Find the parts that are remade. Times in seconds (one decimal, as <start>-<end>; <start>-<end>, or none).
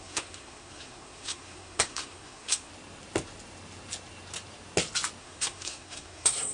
0.0-2.7; 5.2-6.5